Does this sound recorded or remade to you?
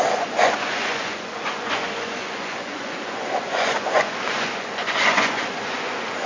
remade